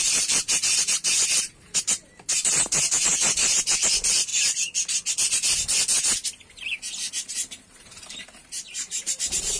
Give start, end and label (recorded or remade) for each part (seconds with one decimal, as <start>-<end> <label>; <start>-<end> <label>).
0.0-4.3 remade; 4.3-7.1 recorded; 7.1-9.6 remade